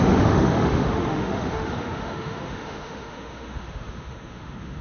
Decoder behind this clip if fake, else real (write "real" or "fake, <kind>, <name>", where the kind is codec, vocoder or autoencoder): fake, autoencoder, DAC-VAE